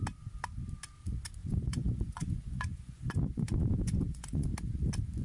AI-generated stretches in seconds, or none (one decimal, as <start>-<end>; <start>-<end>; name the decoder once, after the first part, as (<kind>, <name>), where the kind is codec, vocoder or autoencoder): 1.4-4.5 (vocoder, Vocos)